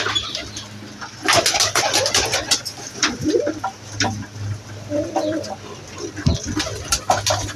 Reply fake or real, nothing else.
real